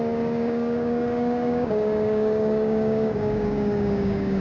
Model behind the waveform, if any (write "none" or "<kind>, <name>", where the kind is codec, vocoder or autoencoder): codec, DAC